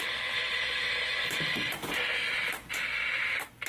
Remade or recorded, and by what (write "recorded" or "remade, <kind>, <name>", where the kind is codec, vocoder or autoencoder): remade, vocoder, BigVGAN v2